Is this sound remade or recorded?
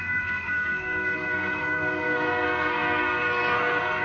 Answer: remade